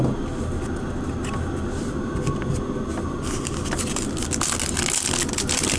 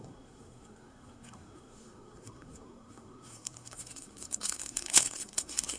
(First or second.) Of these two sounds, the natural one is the first